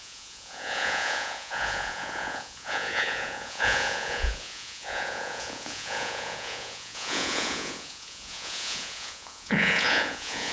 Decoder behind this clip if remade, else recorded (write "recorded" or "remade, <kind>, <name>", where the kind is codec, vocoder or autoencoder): remade, vocoder, Vocos